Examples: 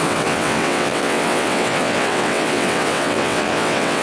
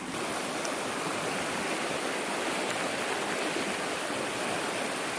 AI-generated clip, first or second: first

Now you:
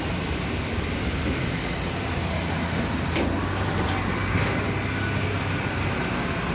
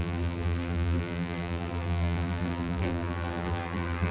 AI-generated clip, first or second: second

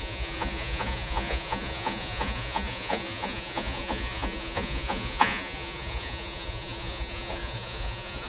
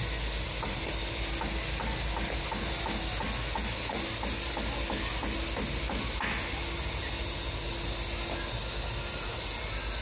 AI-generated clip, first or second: first